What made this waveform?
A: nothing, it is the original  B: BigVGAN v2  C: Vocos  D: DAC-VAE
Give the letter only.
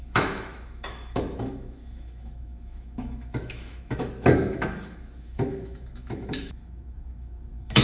D